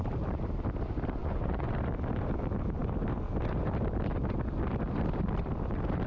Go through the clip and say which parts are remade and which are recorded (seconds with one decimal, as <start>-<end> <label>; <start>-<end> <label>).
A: 0.0-1.2 recorded; 1.2-1.7 remade; 1.7-6.1 recorded